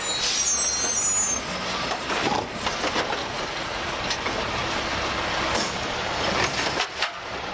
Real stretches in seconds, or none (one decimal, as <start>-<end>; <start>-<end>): 0.0-3.2; 3.9-7.5